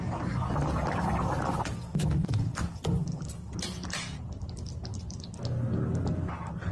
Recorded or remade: recorded